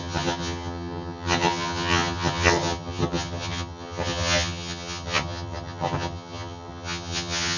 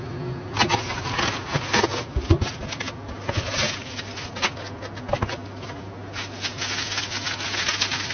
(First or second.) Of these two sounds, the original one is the second